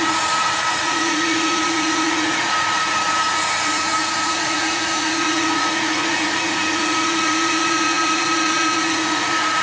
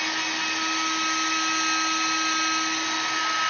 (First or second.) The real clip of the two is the second